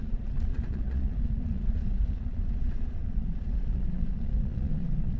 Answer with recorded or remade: remade